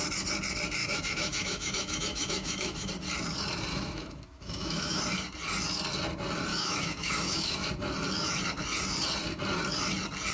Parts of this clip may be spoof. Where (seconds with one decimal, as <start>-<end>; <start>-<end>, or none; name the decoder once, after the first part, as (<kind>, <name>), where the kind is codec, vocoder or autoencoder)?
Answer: 0.8-2.9 (autoencoder, DAC-VAE); 3.7-5.0; 6.5-7.7